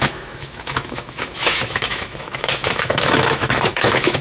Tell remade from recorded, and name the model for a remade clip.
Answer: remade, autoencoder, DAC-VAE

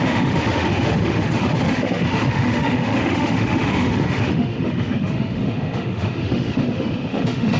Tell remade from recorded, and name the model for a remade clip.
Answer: remade, autoencoder, DAC-VAE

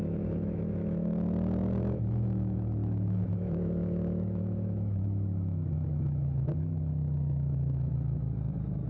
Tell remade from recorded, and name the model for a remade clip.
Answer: remade, autoencoder, DAC-VAE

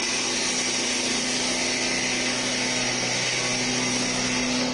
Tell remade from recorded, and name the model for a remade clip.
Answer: recorded